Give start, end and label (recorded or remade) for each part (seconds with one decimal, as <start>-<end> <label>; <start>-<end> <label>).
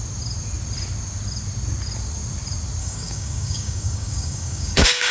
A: 0.0-2.8 recorded; 2.8-5.1 remade